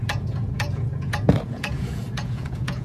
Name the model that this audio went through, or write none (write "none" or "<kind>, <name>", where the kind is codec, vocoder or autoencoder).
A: vocoder, Vocos